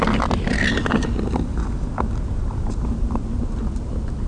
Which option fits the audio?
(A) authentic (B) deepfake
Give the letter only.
A